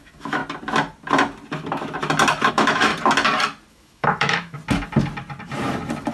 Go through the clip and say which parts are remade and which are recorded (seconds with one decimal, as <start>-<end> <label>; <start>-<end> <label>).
0.0-0.4 remade; 0.4-2.5 recorded; 2.5-2.9 remade; 2.9-3.7 recorded; 3.7-4.6 remade; 4.6-6.1 recorded